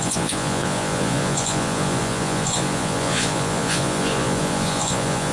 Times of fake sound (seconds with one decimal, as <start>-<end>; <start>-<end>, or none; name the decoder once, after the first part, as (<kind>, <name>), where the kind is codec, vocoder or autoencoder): 0.0-5.3 (vocoder, Vocos)

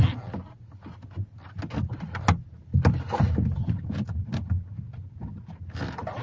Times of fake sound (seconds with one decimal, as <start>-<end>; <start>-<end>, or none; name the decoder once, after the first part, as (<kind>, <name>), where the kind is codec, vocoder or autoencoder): none

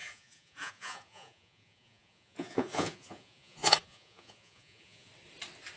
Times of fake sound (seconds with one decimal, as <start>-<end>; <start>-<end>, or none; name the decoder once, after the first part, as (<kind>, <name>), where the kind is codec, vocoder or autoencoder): 0.0-5.1 (vocoder, Vocos)

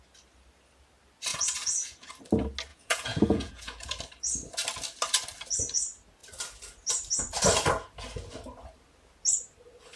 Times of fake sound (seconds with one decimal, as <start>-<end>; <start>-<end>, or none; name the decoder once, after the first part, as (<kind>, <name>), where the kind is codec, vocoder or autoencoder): 1.3-2.1 (vocoder, Vocos); 2.7-3.9

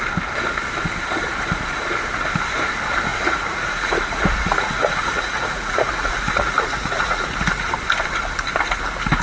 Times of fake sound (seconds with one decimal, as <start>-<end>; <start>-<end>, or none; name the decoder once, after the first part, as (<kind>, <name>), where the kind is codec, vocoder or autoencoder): 3.1-7.7 (vocoder, Vocos)